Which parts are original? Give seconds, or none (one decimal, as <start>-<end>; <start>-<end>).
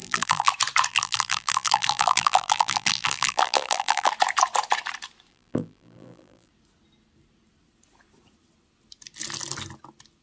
0.5-0.9; 4.1-5.3; 6.5-10.2